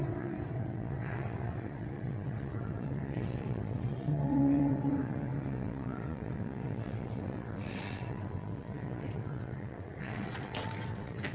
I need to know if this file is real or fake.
fake